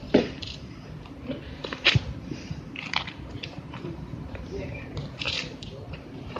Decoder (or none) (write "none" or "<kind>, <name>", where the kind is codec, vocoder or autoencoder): vocoder, BigVGAN v2